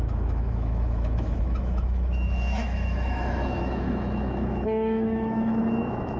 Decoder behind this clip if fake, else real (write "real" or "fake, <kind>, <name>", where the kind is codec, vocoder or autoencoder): fake, autoencoder, DAC-VAE